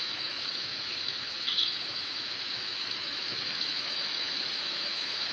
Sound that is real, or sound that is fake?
fake